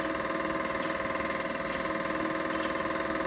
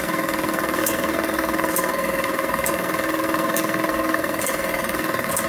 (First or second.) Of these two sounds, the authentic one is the first